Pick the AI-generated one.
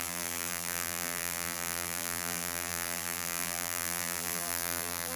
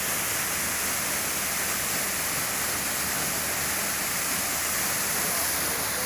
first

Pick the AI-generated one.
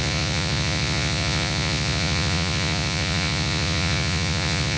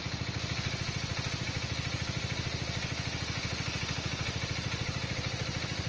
first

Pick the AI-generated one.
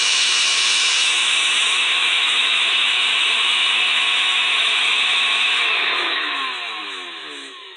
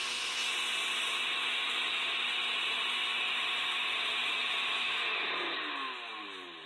first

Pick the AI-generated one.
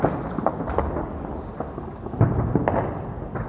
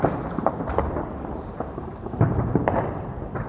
second